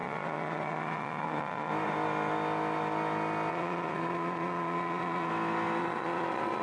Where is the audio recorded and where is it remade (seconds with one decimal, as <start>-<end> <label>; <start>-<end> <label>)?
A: 0.0-1.7 remade; 1.7-3.5 recorded; 3.5-5.3 remade; 5.3-5.8 recorded; 5.8-6.6 remade